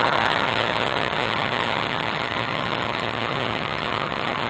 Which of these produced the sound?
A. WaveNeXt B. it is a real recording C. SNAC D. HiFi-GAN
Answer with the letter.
D